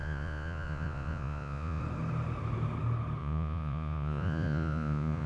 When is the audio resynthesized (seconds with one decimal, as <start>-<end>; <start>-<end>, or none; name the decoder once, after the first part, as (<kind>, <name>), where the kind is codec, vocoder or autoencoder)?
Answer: 0.0-1.8 (vocoder, Vocos); 3.2-5.3